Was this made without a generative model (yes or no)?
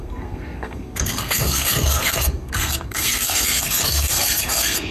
no